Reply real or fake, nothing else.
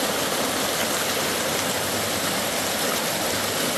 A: real